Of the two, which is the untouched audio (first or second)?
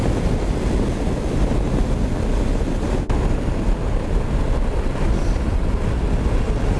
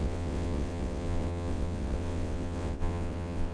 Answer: first